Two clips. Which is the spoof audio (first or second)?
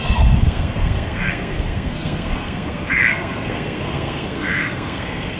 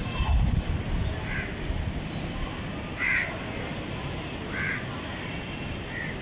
first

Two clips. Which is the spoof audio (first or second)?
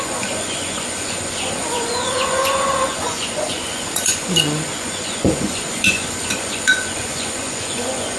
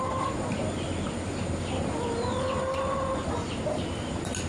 first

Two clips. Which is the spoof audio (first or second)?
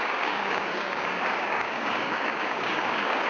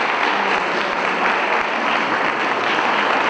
first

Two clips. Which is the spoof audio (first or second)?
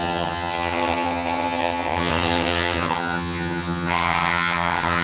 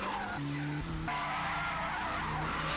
first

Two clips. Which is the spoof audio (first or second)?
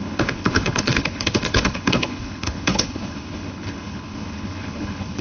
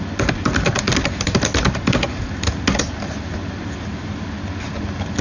first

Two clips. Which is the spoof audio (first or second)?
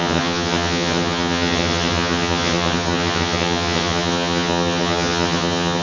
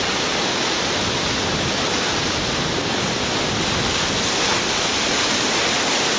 first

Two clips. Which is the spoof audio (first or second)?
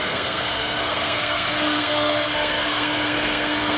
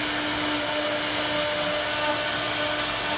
first